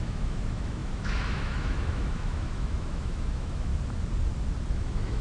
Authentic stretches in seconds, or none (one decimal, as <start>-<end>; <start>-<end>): 3.7-4.7